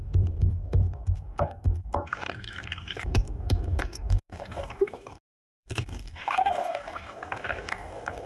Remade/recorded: remade